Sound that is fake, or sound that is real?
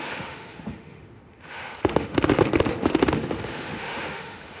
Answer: fake